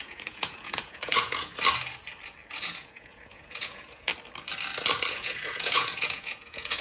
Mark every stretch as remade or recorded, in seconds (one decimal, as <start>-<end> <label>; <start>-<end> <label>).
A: 0.0-1.5 remade; 1.5-2.5 recorded; 2.5-4.1 remade; 4.1-5.1 recorded; 5.1-6.8 remade